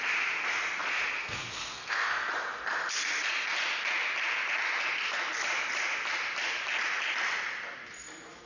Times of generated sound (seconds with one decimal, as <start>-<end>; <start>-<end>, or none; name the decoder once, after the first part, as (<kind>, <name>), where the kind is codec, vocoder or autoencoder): 1.2-2.3 (codec, SNAC)